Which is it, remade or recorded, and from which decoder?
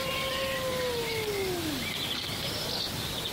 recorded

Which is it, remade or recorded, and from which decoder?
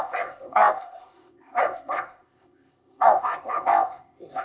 remade, codec, ZipCodec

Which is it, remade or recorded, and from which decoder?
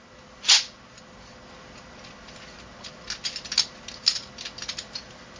recorded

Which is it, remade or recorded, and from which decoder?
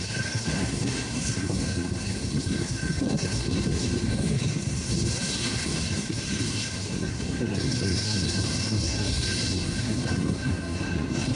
remade, codec, SNAC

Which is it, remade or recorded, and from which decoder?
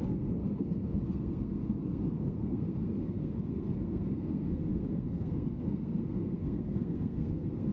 remade, codec, SNAC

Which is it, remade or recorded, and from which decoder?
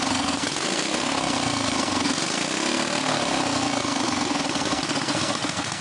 remade, codec, SNAC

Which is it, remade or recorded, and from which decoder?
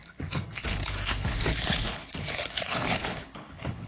remade, codec, HILCodec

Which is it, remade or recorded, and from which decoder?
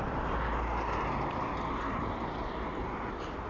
recorded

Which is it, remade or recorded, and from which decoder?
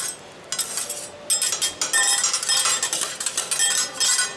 recorded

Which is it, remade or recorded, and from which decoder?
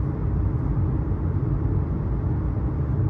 recorded